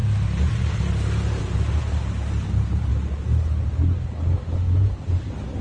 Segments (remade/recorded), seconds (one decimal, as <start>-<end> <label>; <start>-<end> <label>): 0.0-5.6 recorded